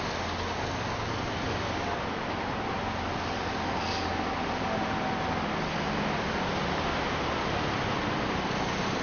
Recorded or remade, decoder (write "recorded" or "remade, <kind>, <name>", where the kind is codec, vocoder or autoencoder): recorded